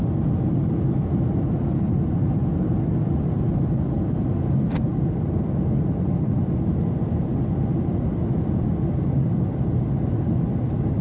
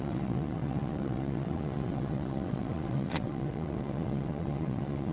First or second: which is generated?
second